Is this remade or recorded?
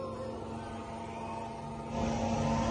recorded